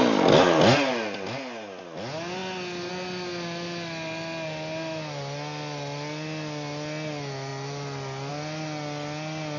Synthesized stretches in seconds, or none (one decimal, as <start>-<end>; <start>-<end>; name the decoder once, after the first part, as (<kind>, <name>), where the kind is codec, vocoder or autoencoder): none